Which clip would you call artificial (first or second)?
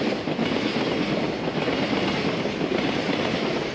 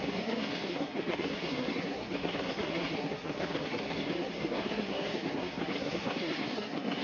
second